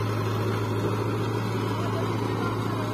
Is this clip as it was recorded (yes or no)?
yes